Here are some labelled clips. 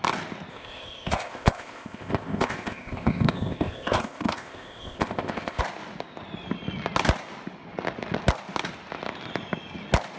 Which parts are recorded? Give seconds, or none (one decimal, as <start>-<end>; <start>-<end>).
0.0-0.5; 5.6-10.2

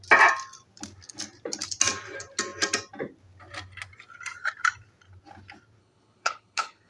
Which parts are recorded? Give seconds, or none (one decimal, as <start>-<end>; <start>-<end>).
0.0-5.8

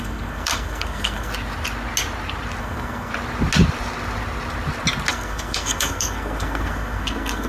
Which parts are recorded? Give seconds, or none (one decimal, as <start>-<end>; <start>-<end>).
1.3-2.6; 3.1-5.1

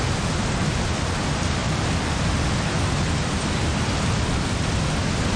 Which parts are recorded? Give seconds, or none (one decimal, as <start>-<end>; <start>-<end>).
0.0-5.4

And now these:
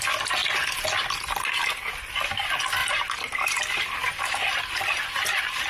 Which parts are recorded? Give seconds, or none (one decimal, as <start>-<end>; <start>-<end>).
0.0-2.8; 3.6-5.7

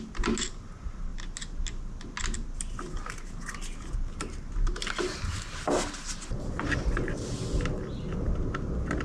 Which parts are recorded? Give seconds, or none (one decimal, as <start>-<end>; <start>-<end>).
0.0-9.0